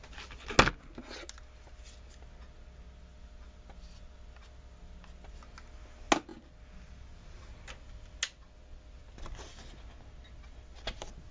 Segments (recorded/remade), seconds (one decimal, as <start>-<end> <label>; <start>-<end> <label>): 0.0-11.3 recorded